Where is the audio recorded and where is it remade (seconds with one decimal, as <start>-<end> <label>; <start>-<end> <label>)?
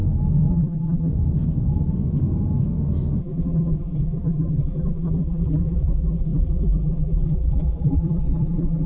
0.0-0.5 recorded; 0.5-1.1 remade; 1.1-3.2 recorded; 3.2-8.9 remade